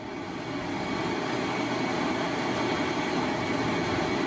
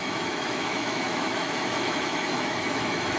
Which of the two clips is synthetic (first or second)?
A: second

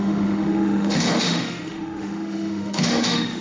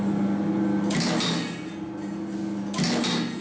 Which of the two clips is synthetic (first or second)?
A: first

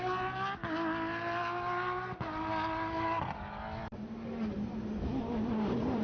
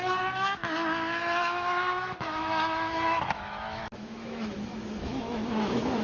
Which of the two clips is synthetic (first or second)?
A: second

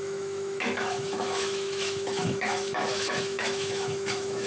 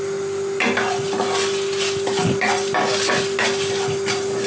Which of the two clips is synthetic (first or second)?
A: first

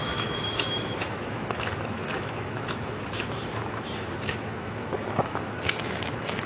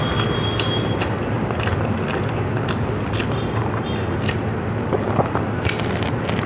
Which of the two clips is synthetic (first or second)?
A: first